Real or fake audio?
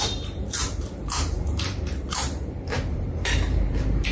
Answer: fake